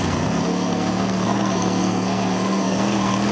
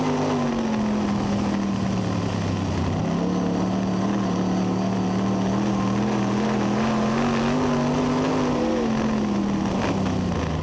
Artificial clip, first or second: first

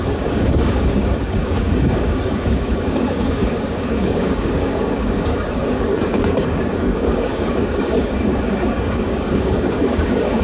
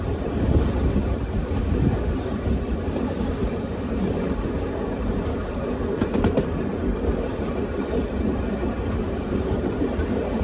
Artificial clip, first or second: first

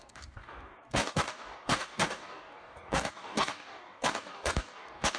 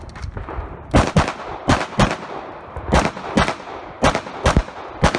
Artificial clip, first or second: first